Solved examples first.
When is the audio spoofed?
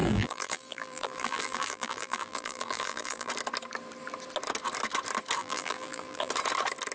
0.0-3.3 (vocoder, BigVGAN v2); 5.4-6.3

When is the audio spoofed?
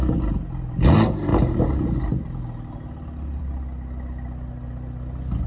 none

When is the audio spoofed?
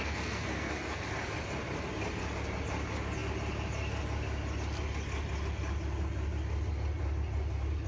0.0-1.0 (codec, SNAC)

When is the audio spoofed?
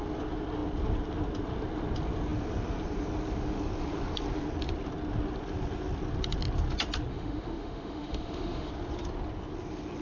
7.1-8.7 (autoencoder, DAC-VAE)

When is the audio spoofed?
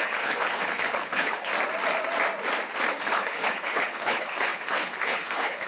0.0-1.5 (codec, HILCodec); 3.0-5.7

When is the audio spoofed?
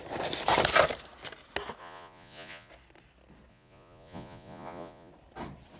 1.8-2.7 (vocoder, Vocos); 3.5-5.1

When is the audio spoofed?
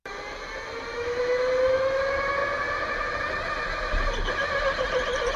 0.9-2.0 (autoencoder, DAC-VAE)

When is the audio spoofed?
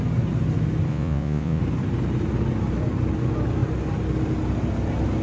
0.9-1.6 (vocoder, Vocos)